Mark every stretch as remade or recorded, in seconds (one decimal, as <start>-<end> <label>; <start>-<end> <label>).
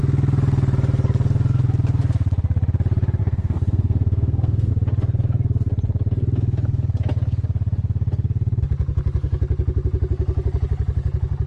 0.0-3.2 recorded; 3.2-4.7 remade; 4.7-11.5 recorded